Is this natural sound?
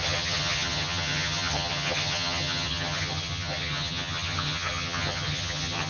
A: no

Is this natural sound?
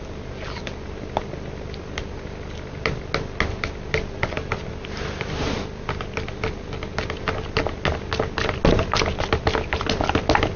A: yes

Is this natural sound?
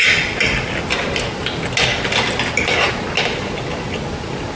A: yes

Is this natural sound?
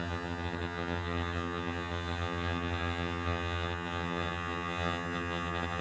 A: no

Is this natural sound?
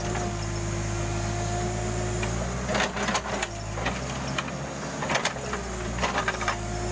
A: yes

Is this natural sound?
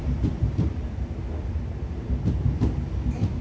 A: yes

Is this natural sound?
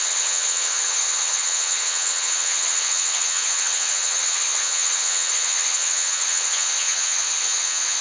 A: no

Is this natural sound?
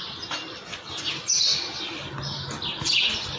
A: yes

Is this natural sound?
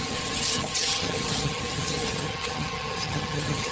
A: no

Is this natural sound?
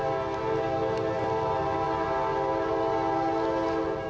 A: yes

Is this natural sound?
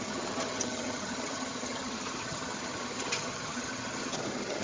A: no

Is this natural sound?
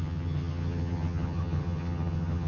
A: no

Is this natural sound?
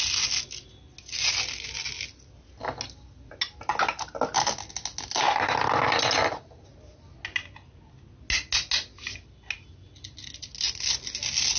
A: yes